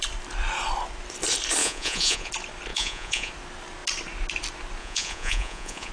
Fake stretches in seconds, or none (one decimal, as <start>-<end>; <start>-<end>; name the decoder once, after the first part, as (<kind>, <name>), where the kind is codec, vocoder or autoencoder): 1.6-2.3 (vocoder, Vocos); 2.7-3.3; 4.8-5.9